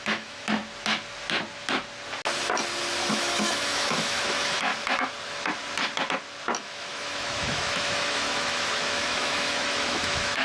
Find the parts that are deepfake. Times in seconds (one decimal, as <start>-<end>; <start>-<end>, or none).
0.0-0.6; 3.1-4.7; 6.6-10.4